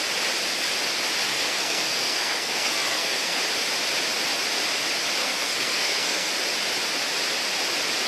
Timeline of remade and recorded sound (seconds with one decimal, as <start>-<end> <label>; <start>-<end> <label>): 0.0-1.3 recorded; 1.3-3.4 remade; 3.4-5.2 recorded; 5.2-6.3 remade; 6.3-8.1 recorded